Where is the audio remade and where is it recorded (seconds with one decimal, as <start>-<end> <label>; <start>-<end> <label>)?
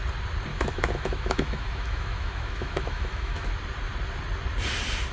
0.0-0.5 recorded; 0.5-3.5 remade; 3.5-5.1 recorded